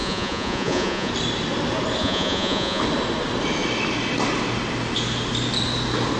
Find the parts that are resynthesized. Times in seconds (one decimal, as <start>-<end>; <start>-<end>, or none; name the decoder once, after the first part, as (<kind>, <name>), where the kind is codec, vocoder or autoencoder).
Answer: 0.0-1.1 (vocoder, Vocos); 2.0-2.8